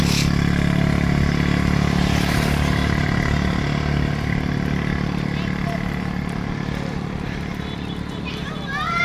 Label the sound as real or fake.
real